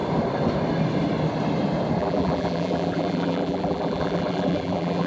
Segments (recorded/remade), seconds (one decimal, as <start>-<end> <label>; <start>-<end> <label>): 0.0-2.0 recorded; 2.0-5.1 remade